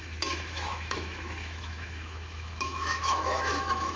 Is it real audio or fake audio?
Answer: fake